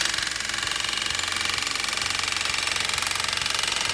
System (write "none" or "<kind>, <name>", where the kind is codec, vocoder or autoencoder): none